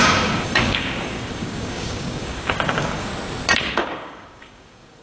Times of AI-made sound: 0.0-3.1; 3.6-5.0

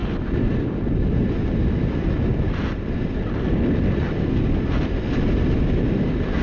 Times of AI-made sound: none